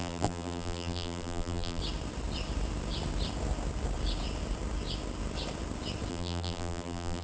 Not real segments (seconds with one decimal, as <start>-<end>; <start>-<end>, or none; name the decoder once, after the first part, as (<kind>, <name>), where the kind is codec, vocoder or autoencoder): 0.0-1.8 (vocoder, BigVGAN v2); 6.1-7.2